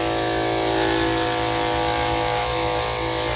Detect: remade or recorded recorded